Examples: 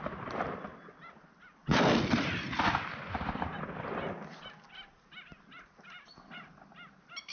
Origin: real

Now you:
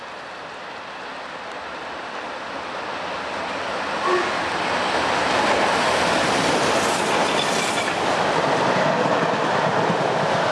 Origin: real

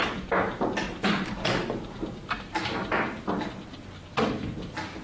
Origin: real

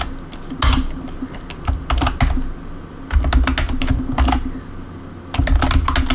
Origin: real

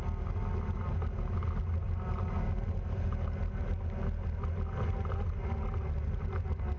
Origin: real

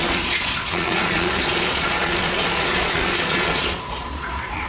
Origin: fake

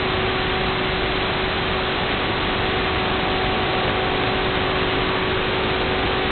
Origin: real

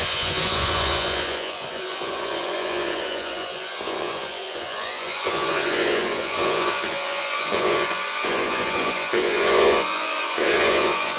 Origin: fake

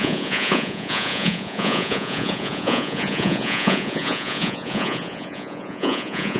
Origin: fake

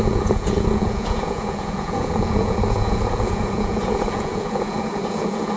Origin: fake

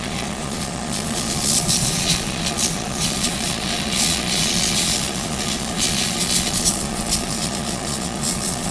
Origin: fake